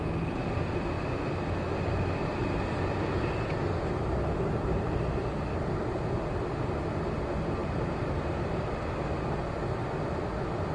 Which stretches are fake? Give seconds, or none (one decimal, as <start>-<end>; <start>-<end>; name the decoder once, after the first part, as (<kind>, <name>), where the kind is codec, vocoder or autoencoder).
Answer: 3.6-6.2 (vocoder, BigVGAN v2); 7.6-8.7